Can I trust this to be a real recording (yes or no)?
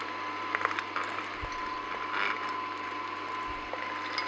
yes